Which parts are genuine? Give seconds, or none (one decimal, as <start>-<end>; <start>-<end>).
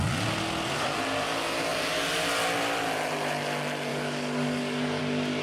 0.0-3.9; 5.0-5.4